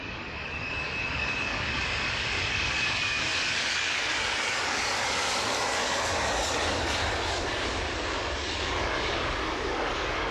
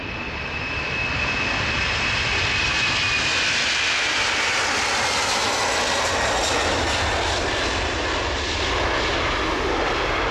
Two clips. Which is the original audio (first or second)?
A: second